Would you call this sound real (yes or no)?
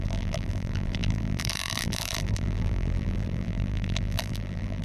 no